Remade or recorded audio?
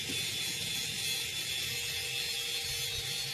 recorded